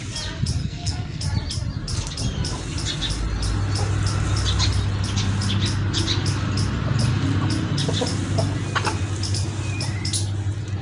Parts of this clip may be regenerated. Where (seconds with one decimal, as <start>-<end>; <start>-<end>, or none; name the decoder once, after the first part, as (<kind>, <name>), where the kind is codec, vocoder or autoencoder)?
0.6-1.2 (codec, SNAC)